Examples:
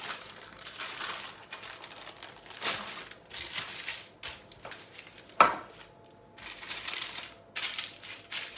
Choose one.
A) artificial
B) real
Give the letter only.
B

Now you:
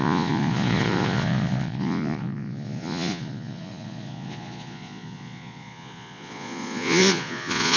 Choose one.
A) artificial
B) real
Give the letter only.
A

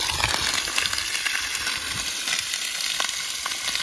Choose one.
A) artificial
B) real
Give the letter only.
B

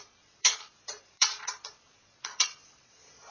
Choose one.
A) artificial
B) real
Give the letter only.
A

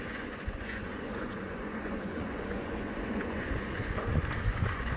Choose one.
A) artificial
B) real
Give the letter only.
A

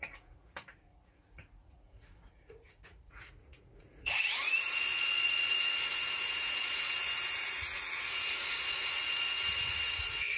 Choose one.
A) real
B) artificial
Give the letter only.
B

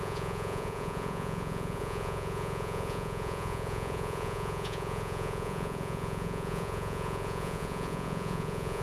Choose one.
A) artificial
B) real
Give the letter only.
A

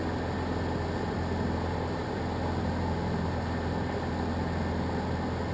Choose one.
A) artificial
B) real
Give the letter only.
B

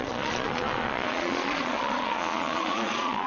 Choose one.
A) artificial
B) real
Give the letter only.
A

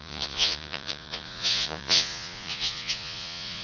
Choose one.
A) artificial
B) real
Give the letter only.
A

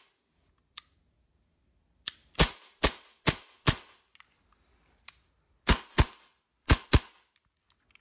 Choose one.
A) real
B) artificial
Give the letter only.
A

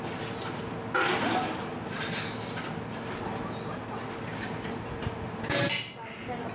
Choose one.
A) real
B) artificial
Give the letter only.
A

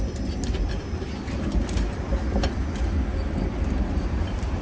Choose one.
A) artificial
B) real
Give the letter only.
B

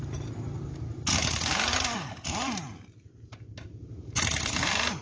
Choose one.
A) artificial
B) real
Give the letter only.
B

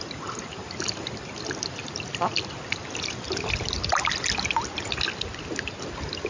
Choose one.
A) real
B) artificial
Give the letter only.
A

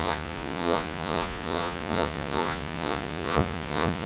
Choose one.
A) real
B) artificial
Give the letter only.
B